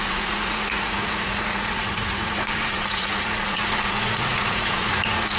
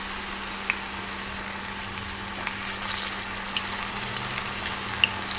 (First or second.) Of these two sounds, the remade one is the first